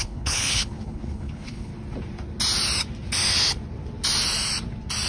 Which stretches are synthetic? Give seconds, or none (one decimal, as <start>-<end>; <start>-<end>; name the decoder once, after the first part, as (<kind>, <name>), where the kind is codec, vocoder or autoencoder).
0.0-1.7 (codec, HILCodec)